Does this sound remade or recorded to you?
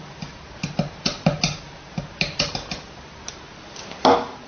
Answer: recorded